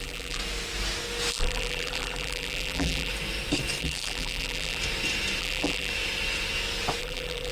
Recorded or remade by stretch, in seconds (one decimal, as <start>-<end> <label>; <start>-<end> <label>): 0.0-0.4 remade; 0.4-1.3 recorded; 1.3-3.1 remade; 3.1-3.8 recorded; 3.8-4.8 remade; 4.8-5.4 recorded; 5.4-5.9 remade; 5.9-7.0 recorded; 7.0-7.5 remade